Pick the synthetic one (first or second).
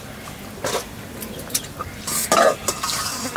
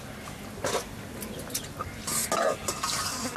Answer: first